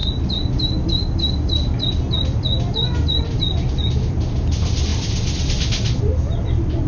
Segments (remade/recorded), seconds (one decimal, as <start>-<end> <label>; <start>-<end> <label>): 0.0-6.9 recorded